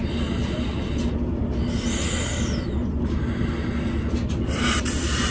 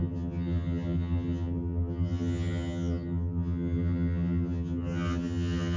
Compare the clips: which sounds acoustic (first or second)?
first